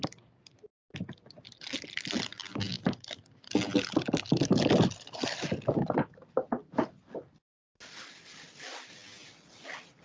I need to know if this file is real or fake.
real